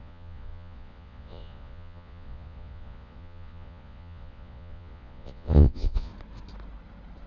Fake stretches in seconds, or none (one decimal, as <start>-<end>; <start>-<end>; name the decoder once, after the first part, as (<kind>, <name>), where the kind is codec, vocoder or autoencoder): 0.0-6.1 (vocoder, Vocos)